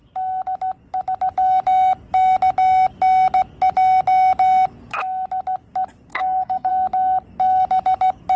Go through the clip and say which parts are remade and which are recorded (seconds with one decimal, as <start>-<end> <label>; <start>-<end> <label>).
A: 0.0-6.1 recorded; 6.1-6.7 remade; 6.7-8.4 recorded